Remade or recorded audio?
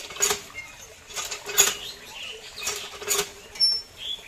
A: recorded